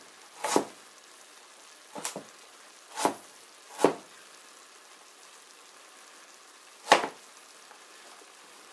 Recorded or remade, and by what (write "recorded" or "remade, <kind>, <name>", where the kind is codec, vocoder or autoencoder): recorded